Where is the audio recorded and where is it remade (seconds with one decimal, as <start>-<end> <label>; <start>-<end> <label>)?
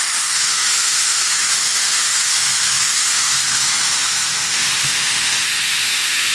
0.0-6.3 remade